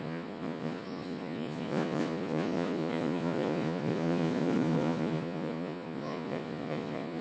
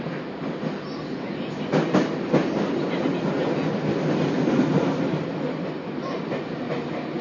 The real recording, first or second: second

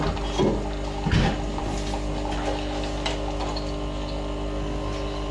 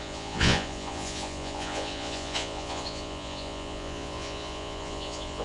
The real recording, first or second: first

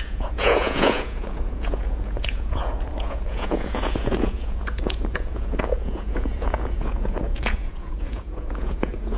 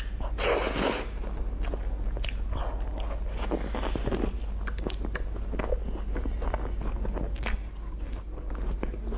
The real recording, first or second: second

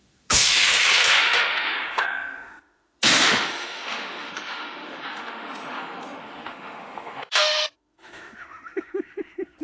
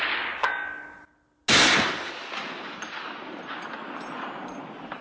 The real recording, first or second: second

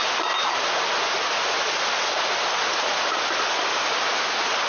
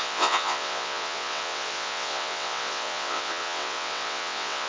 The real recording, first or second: first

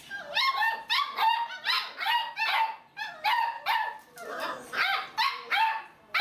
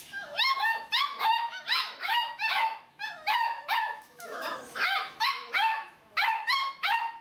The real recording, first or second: first